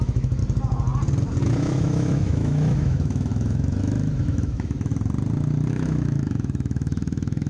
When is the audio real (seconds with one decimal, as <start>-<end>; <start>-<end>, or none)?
0.4-1.4; 4.9-5.7